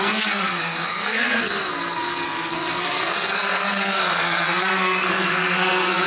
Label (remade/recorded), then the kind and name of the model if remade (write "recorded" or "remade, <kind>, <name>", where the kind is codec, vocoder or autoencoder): remade, codec, SNAC